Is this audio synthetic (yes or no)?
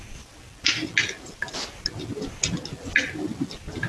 no